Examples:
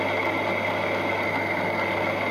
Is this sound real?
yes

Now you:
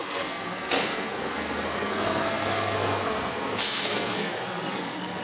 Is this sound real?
no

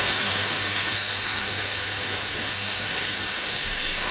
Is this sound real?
no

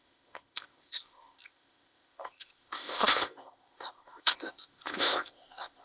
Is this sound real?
no